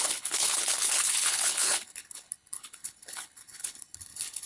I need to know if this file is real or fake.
fake